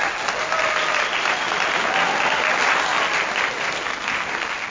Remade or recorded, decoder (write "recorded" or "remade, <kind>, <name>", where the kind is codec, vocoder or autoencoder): recorded